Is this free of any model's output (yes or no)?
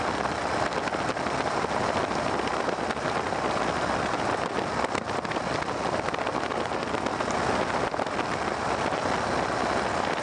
yes